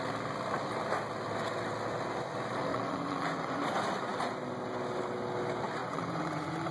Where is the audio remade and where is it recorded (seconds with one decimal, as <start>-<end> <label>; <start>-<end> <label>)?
0.0-2.7 recorded; 2.7-3.6 remade; 3.6-5.8 recorded; 5.8-6.7 remade